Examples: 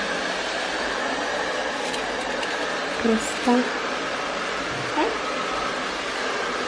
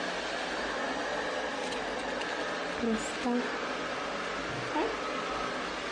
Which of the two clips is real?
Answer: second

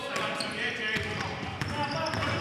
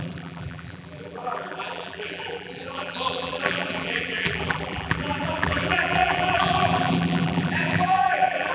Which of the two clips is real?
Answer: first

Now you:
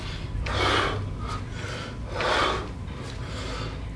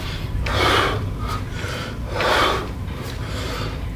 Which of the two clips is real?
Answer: first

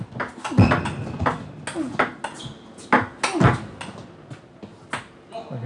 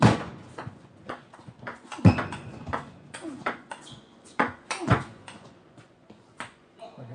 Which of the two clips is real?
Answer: first